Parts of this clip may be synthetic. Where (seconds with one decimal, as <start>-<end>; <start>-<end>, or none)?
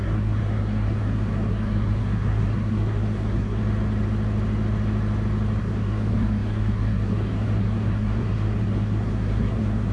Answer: 0.0-3.6; 5.6-9.9